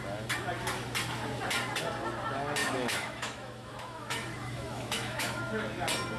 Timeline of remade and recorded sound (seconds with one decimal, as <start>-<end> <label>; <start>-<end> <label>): 0.0-2.6 recorded; 2.6-5.4 remade; 5.4-6.2 recorded